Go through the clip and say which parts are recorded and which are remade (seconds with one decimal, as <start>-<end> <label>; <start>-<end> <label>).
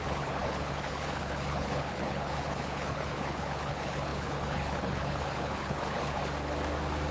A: 0.0-6.2 remade; 6.2-7.1 recorded